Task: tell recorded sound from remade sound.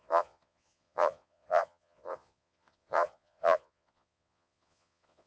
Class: remade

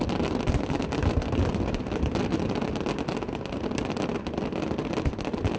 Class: recorded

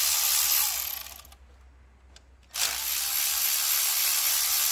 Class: recorded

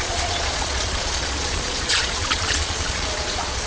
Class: remade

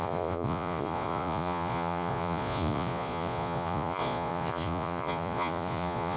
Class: remade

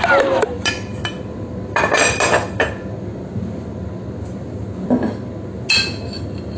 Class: recorded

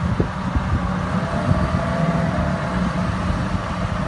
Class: recorded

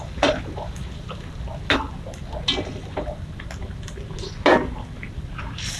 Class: recorded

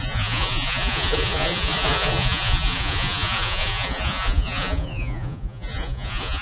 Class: remade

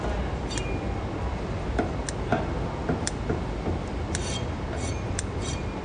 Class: recorded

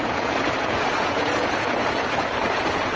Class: remade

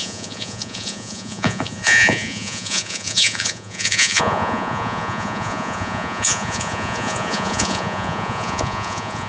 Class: remade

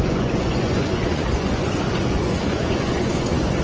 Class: remade